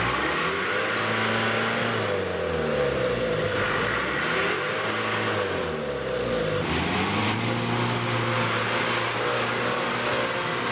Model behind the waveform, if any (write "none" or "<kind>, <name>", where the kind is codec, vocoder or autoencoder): none